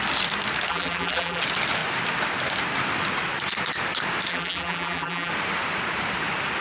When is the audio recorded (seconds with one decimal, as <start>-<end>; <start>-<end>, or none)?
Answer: 0.0-0.7; 1.4-4.3; 5.3-6.6